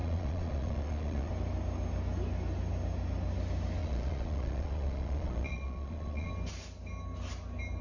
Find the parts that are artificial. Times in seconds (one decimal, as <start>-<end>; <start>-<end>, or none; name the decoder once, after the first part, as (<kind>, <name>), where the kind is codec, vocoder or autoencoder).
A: 0.0-1.3 (vocoder, Vocos); 3.8-6.3